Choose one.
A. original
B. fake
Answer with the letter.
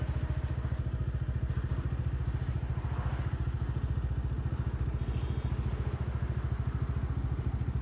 A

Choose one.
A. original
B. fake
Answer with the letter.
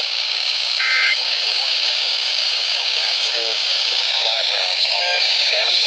B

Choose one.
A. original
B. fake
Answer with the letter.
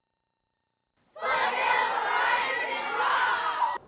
B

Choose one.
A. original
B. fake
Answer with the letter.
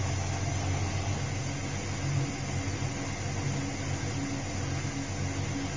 A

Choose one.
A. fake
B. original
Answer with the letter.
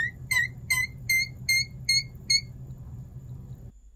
B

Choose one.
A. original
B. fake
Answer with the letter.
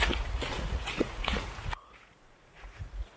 B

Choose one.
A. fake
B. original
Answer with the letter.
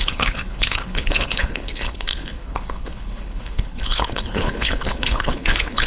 A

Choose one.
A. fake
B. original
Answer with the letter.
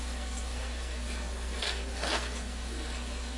A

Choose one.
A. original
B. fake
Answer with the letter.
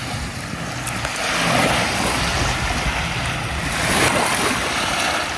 A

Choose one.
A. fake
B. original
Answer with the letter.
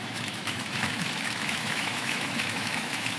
A